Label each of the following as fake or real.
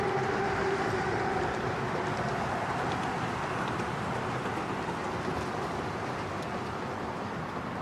fake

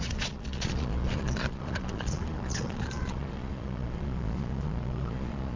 fake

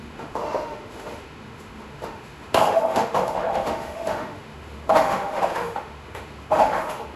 fake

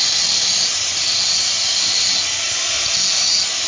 real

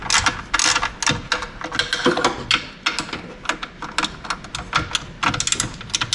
real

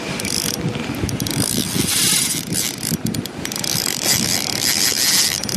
fake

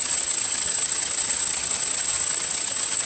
fake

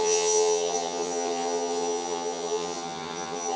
fake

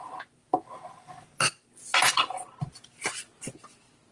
real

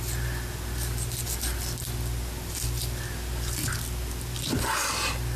real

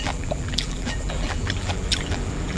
fake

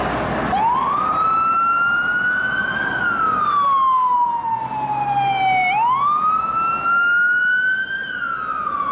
real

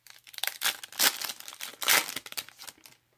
real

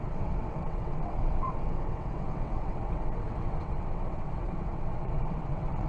fake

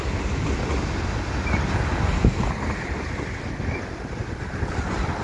real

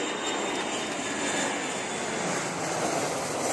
real